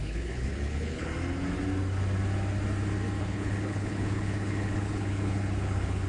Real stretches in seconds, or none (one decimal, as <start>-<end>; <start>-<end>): 1.1-3.2